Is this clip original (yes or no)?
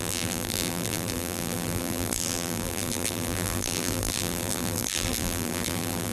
no